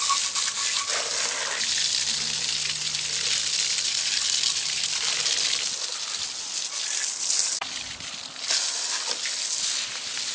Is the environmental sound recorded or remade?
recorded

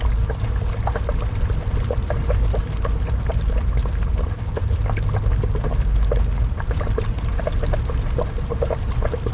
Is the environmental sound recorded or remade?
recorded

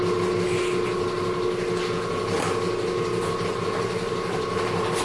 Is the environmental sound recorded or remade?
recorded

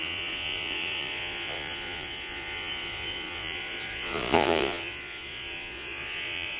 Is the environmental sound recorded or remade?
remade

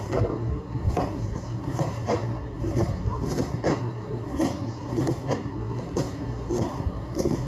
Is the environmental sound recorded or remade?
remade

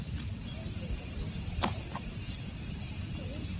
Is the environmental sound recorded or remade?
recorded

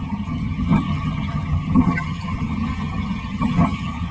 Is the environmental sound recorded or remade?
remade